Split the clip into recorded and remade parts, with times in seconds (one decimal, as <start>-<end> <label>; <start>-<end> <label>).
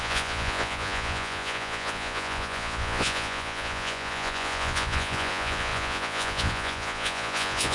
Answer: 0.0-7.7 remade